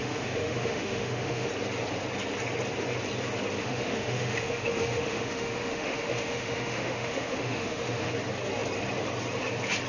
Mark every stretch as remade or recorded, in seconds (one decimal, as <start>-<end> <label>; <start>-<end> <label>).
0.0-1.5 remade; 1.5-3.6 recorded; 3.6-8.1 remade; 8.1-9.9 recorded